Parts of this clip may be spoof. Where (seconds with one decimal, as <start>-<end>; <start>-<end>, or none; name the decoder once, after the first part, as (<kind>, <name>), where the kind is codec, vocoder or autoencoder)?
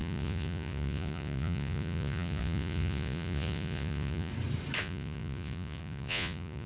0.0-4.3 (vocoder, Vocos); 4.8-6.7